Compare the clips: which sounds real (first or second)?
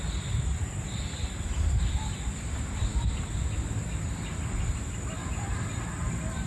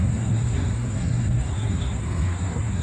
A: first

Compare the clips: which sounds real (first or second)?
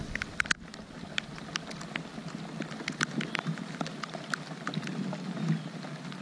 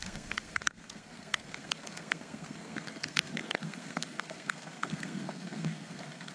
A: first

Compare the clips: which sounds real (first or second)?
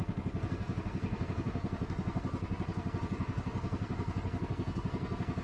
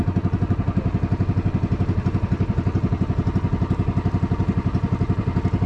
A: second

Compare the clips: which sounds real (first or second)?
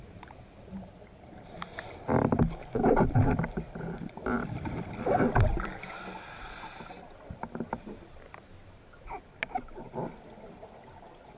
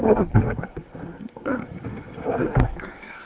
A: first